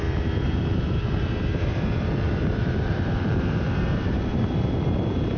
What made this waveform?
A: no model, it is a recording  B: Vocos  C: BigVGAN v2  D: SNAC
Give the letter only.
C